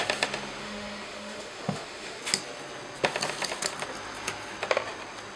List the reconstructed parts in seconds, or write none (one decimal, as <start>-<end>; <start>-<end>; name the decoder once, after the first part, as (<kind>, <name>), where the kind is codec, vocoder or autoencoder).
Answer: 0.6-2.2 (autoencoder, DAC-VAE)